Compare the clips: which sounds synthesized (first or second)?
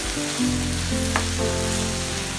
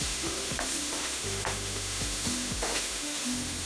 second